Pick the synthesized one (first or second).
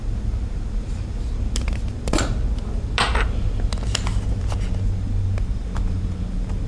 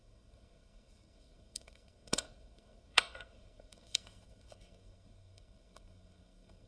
second